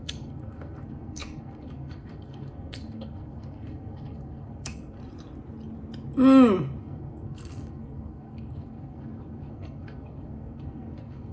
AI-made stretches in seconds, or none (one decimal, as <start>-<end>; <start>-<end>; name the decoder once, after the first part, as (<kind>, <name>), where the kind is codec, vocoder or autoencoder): 0.0-5.0 (codec, SNAC); 6.8-11.3